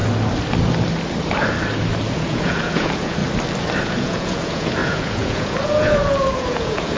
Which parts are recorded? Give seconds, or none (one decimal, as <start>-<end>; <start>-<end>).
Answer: 0.0-2.1; 3.2-3.8